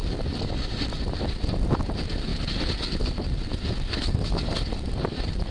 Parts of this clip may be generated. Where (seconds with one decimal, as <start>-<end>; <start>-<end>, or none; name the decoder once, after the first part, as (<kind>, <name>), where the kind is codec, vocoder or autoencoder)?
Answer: none